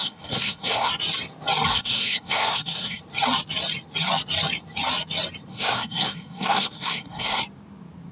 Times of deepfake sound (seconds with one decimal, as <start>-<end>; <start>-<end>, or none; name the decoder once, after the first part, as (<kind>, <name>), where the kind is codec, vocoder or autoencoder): 0.0-0.9 (codec, SNAC); 1.7-3.0; 5.5-7.4